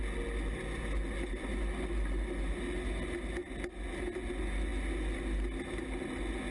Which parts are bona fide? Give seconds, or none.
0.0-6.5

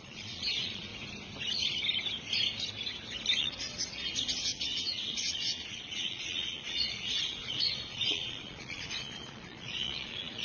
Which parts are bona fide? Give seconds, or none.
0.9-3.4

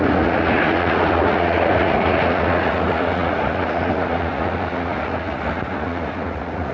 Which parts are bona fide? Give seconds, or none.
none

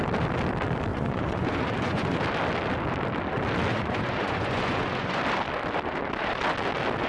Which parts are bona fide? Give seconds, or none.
0.0-0.9; 2.2-3.7; 5.2-7.1